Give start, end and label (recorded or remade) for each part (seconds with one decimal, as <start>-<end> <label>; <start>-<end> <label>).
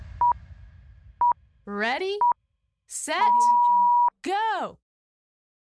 0.0-5.6 recorded